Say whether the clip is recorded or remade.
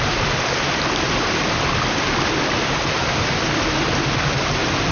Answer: recorded